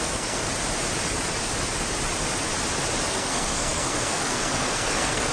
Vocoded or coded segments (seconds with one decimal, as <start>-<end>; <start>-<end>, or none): 0.0-0.5; 3.1-5.3